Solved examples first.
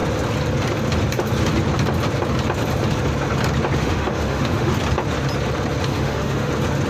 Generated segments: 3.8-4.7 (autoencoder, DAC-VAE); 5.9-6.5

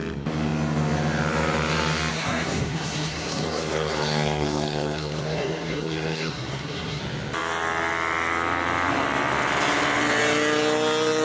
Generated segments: 2.1-7.0 (codec, SNAC)

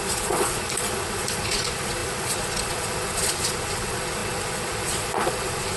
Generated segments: 0.0-5.8 (vocoder, Vocos)

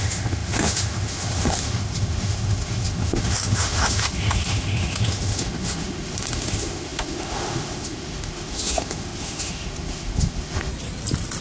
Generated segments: 0.0-10.7 (autoencoder, DAC-VAE)

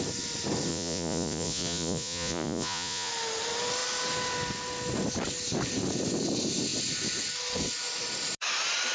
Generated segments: 0.7-3.1 (vocoder, Vocos)

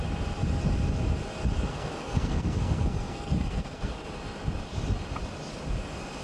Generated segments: 1.7-3.9 (codec, SNAC)

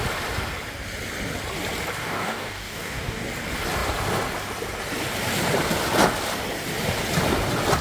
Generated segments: 2.0-3.2 (codec, DAC)

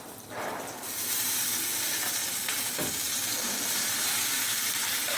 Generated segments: 0.0-2.2 (vocoder, BigVGAN v2); 3.1-5.2